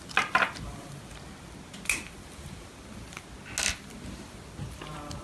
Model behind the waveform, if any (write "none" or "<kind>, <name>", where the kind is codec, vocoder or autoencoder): none